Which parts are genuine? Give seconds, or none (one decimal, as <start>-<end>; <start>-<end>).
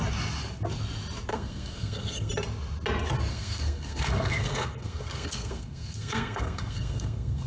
0.0-1.3; 2.3-3.3